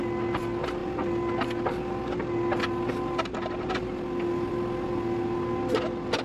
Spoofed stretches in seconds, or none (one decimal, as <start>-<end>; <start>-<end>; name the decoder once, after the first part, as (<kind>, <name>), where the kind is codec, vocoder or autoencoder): none